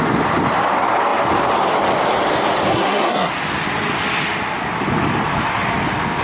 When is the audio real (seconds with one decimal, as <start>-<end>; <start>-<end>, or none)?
0.0-2.7; 3.3-6.2